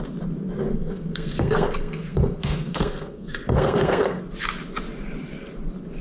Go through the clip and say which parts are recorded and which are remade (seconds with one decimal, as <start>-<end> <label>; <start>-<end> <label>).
0.0-0.7 recorded; 0.7-4.2 remade; 4.2-6.0 recorded

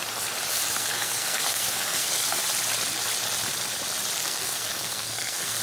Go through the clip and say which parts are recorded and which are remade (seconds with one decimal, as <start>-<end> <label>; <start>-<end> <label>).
0.0-0.5 recorded; 0.5-2.4 remade; 2.4-4.2 recorded; 4.2-5.6 remade

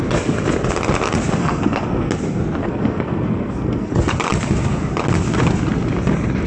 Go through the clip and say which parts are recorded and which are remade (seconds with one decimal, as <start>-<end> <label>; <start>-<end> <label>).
0.0-1.4 recorded; 1.4-2.1 remade; 2.1-2.6 recorded; 2.6-3.9 remade; 3.9-6.5 recorded

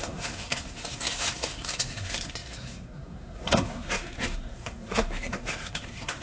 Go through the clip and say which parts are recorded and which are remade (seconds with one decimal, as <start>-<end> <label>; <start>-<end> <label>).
0.0-6.2 remade

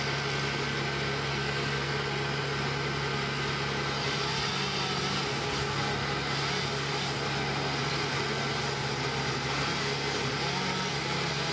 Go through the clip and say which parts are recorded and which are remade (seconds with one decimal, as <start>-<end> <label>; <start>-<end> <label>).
0.0-1.3 recorded; 1.3-1.9 remade; 1.9-11.5 recorded

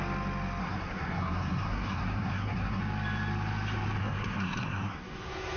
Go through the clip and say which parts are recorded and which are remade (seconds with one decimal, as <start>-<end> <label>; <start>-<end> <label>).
0.0-0.6 recorded; 0.6-2.8 remade; 2.8-4.0 recorded; 4.0-5.6 remade

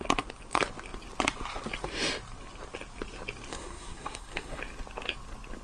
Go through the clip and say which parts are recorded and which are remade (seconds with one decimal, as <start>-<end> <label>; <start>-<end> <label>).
0.0-3.5 recorded; 3.5-4.6 remade; 4.6-5.6 recorded

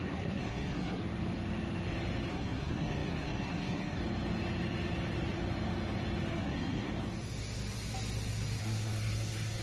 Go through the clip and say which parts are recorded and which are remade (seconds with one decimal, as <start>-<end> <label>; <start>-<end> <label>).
0.0-1.0 remade; 1.0-2.3 recorded; 2.3-4.0 remade; 4.0-6.3 recorded; 6.3-6.9 remade; 6.9-8.6 recorded; 8.6-9.6 remade